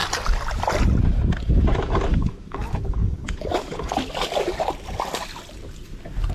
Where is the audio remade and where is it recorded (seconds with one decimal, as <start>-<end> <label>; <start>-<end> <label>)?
0.0-2.1 recorded; 2.1-3.9 remade; 3.9-6.3 recorded